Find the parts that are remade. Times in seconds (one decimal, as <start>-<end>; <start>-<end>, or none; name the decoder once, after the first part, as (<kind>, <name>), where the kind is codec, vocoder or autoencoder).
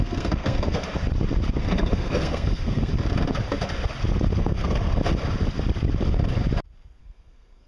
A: 0.0-0.8 (codec, SNAC); 1.6-2.9; 4.4-5.0; 7.0-7.7